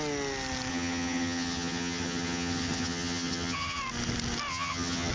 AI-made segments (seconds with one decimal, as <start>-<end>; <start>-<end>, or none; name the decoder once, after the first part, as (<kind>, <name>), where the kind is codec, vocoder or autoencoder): 0.7-3.8 (vocoder, HiFi-GAN); 4.5-5.1